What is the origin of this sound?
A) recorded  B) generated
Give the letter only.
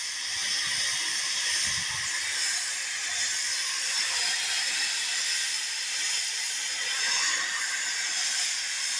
A